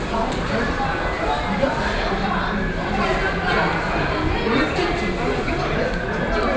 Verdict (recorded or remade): recorded